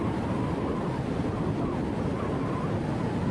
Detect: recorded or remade recorded